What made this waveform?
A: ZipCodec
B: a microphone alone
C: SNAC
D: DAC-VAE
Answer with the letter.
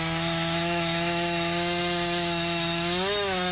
D